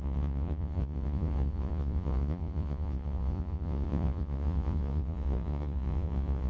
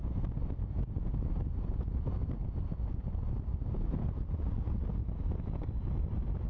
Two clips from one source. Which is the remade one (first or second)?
first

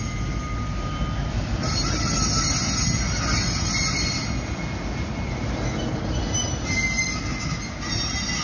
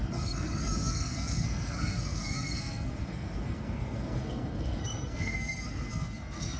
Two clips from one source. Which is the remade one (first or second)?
second